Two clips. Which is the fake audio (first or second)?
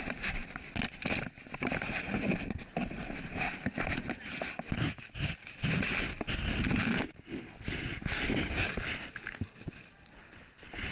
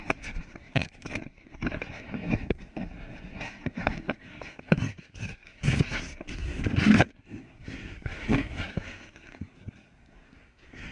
second